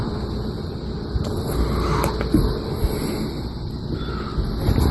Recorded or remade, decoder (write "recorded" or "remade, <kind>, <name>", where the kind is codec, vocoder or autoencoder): recorded